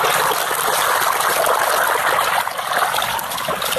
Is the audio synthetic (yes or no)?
no